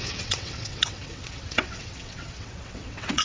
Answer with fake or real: fake